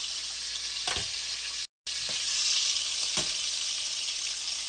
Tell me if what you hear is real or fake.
real